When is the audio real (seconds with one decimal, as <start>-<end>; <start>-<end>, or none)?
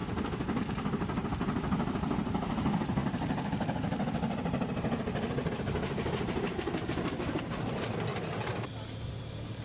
0.0-9.6